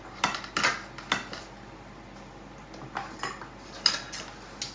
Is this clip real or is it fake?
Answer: real